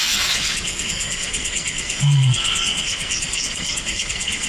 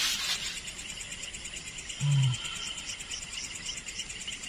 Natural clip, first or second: second